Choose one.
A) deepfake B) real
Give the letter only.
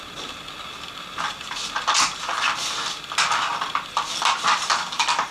B